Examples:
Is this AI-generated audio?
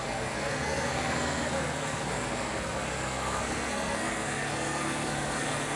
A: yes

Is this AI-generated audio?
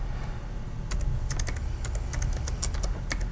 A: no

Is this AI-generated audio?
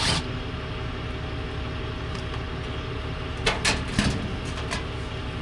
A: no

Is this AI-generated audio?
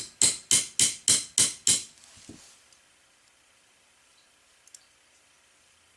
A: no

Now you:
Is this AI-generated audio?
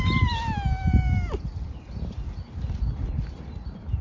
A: no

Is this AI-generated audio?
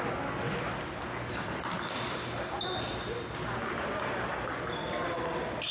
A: no